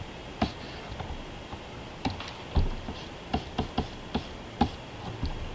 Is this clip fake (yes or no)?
no